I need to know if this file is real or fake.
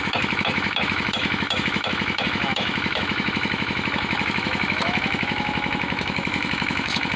fake